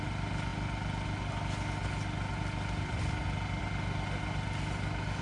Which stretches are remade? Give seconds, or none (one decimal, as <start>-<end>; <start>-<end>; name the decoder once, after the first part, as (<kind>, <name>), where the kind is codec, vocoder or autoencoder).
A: none